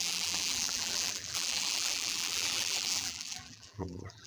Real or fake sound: fake